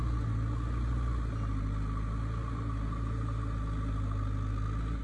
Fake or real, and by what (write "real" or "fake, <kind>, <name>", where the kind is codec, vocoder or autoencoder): real